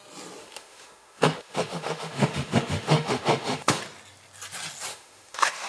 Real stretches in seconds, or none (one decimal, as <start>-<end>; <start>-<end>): 0.0-0.4; 3.8-4.9